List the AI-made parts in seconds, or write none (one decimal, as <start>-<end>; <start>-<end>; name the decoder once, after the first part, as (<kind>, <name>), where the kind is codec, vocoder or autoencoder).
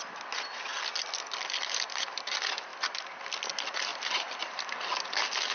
3.9-4.7 (vocoder, BigVGAN v2)